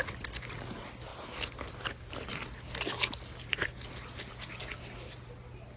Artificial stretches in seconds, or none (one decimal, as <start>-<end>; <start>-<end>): none